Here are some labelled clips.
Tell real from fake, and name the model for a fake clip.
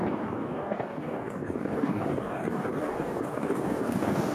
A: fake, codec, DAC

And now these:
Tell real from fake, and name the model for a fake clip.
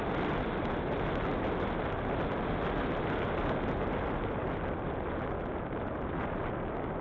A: real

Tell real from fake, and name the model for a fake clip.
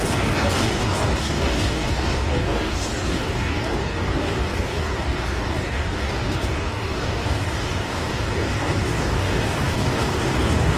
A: fake, codec, DAC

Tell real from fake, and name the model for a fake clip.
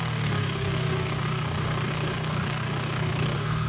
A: fake, codec, DAC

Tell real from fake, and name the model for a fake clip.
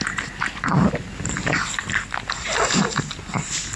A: real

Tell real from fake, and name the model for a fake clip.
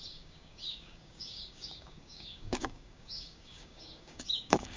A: fake, codec, DAC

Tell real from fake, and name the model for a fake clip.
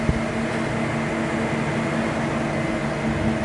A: real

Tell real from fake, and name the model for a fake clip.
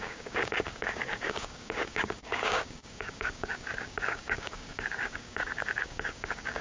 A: fake, codec, DAC